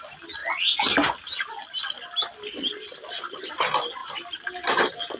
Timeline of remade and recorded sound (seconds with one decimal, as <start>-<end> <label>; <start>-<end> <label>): 0.0-5.2 recorded